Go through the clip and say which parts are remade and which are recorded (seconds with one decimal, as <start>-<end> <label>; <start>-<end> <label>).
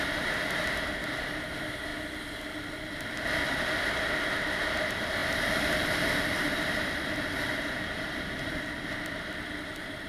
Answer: 0.0-5.2 recorded; 5.2-10.1 remade